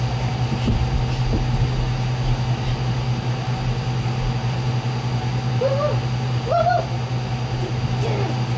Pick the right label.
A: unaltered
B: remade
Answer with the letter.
A